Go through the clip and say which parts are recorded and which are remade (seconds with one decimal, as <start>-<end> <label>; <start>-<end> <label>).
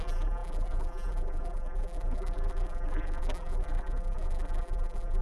0.0-5.2 remade